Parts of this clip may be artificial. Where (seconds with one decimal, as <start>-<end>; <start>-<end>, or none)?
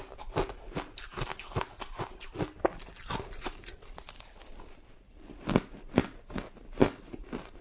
none